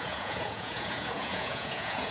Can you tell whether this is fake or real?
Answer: fake